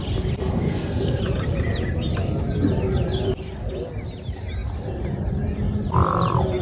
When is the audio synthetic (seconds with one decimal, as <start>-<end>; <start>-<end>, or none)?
0.4-1.2